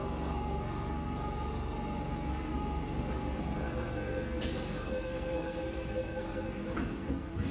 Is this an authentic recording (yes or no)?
no